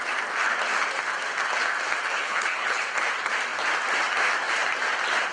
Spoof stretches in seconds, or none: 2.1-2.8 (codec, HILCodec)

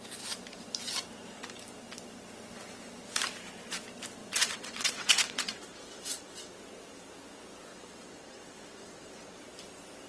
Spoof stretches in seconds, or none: 4.2-6.5 (vocoder, WaveNeXt); 7.7-9.4

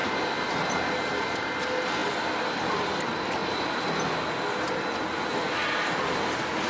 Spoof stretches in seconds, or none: none

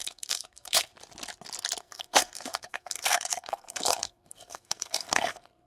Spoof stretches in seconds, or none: 0.0-0.9 (codec, SNAC); 1.8-5.7

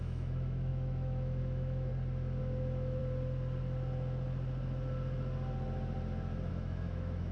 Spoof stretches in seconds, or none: 0.0-1.9 (autoencoder, DAC-VAE); 2.4-3.0; 6.5-7.3

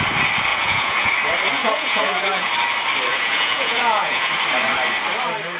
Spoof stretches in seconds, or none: 0.5-1.1 (vocoder, Vocos); 1.6-2.5; 3.1-4.3